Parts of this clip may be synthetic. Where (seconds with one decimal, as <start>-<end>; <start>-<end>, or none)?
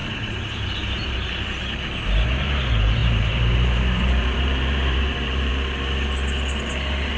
0.0-1.3; 3.0-5.5